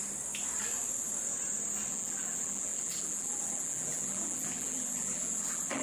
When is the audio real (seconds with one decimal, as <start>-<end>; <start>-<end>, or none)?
0.0-1.9